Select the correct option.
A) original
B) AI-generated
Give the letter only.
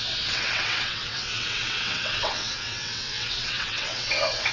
B